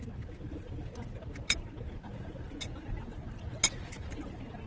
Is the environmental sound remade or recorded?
recorded